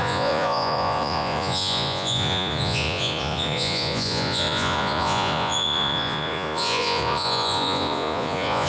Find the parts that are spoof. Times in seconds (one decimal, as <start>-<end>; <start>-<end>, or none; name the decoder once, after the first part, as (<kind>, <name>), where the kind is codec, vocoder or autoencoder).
0.0-8.7 (vocoder, Vocos)